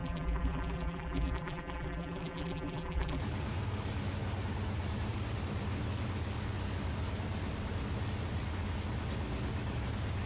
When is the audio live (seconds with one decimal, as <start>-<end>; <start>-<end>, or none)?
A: 3.2-10.3